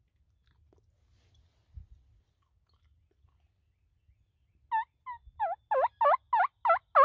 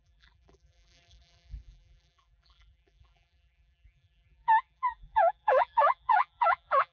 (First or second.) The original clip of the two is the first